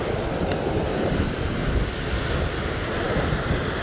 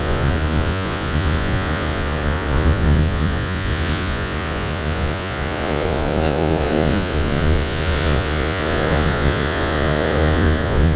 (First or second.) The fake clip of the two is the second